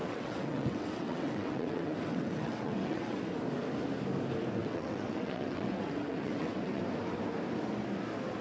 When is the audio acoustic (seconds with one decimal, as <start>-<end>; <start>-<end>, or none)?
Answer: 3.2-4.6; 6.8-8.4

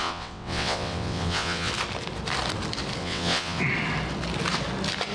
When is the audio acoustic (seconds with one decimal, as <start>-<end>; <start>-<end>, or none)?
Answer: 1.7-3.0; 3.6-5.1

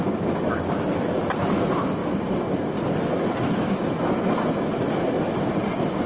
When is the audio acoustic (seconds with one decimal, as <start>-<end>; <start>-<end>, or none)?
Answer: 0.0-6.1

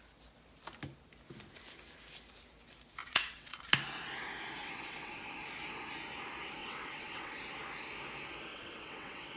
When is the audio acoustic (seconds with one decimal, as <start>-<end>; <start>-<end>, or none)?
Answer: 0.0-3.0; 3.6-4.6; 5.4-6.6; 7.4-8.5